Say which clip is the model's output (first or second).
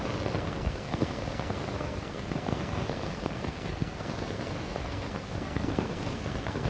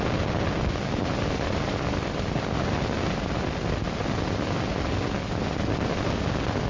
first